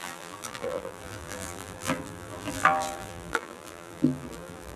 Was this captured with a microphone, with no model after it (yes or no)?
no